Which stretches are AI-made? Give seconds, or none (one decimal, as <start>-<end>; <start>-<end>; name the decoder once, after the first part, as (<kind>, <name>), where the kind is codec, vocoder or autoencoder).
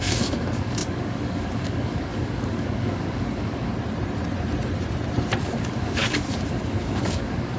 0.0-3.7 (codec, DAC); 5.4-7.6